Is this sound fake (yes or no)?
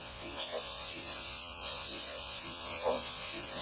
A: yes